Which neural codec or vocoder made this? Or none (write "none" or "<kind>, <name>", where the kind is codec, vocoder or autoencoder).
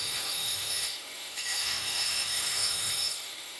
autoencoder, DAC-VAE